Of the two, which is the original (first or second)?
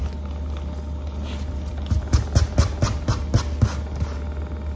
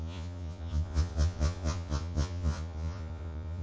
first